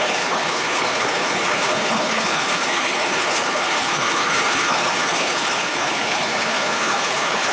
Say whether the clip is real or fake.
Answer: fake